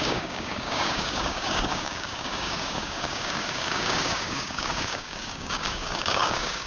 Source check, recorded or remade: remade